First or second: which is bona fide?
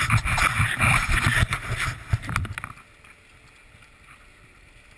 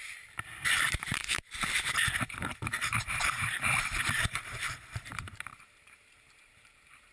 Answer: first